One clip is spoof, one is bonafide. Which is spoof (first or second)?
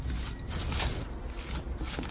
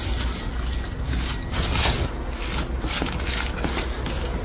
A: first